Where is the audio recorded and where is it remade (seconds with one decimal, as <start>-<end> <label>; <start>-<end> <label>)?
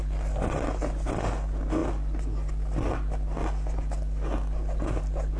0.0-5.4 recorded